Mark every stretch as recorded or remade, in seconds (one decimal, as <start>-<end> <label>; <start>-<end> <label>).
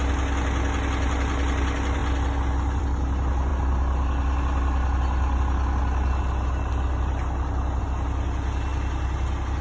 0.0-9.6 recorded